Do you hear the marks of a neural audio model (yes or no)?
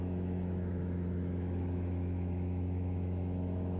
yes